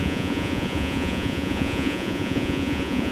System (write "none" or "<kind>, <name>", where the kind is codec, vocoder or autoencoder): vocoder, Vocos